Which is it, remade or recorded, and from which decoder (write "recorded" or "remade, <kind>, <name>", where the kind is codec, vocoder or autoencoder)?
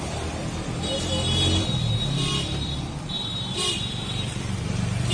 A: remade, vocoder, BigVGAN v2